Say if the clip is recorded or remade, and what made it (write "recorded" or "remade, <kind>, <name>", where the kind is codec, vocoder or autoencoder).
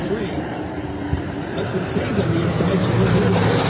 remade, vocoder, BigVGAN v2